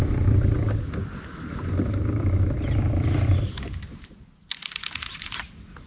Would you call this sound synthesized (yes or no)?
no